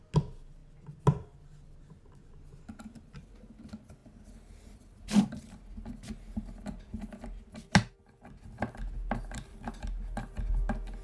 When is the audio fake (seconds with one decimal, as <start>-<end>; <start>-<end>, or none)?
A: none